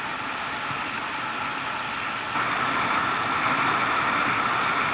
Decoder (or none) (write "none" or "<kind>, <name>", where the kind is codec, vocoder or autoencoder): none